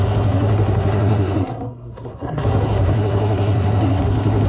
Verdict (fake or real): fake